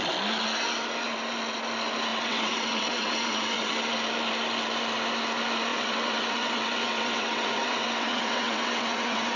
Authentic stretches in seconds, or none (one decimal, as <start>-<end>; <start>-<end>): 0.0-2.1; 3.7-5.7